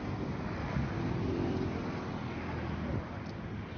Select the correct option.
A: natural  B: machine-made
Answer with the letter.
A